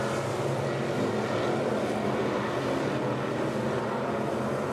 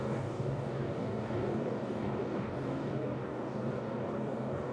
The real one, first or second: first